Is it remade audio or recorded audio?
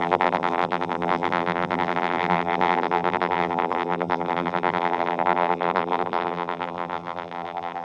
remade